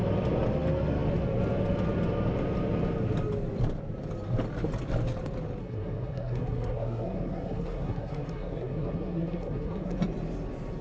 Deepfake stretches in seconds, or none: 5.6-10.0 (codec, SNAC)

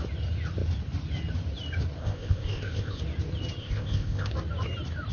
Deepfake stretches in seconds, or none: 2.0-3.0 (codec, ZipCodec); 3.6-4.3